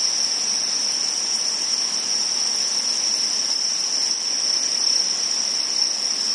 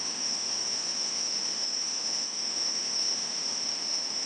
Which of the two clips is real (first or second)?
first